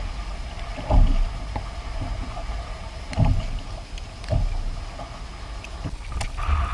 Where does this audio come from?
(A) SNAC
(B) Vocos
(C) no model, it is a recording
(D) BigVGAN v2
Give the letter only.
C